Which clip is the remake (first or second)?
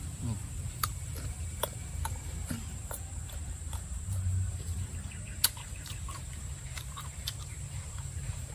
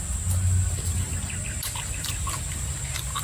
first